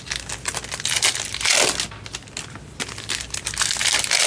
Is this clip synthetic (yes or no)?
no